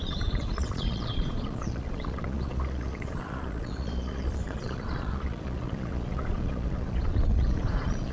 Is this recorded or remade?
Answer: remade